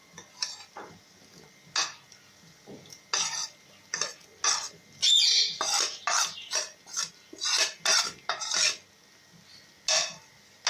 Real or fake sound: real